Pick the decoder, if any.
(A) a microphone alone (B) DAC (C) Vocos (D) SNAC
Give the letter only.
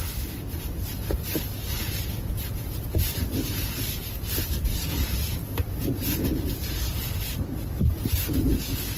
A